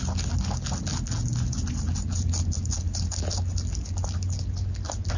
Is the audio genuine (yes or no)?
yes